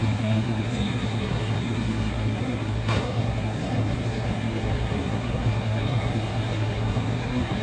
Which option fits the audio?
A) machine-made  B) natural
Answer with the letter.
A